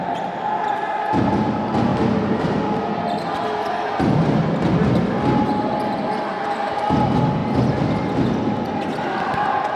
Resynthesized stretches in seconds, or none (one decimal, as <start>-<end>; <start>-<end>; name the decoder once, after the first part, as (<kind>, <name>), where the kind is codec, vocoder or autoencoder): none